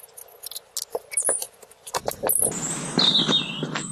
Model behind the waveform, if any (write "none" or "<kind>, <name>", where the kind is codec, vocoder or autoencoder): none